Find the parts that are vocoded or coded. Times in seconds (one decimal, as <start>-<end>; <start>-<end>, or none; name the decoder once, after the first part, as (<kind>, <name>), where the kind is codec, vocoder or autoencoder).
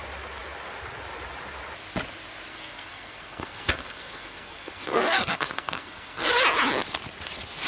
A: 2.5-6.3 (codec, SNAC)